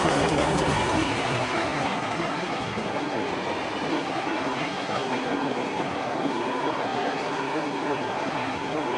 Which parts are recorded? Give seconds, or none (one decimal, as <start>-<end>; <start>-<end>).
3.3-3.9